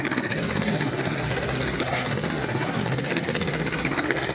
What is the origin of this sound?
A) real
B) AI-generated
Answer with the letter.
B